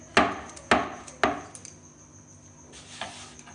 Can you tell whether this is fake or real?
real